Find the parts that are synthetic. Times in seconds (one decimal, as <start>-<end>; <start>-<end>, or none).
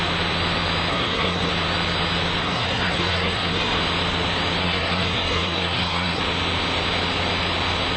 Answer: 0.9-1.5; 2.4-3.8; 4.6-6.2